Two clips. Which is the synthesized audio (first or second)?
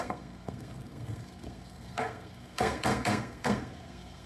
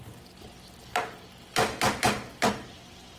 first